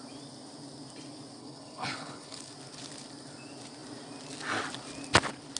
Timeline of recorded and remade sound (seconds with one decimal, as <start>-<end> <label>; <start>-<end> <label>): 0.0-1.4 recorded; 1.4-2.5 remade; 2.5-5.6 recorded